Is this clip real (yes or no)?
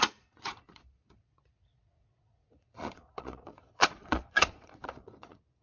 no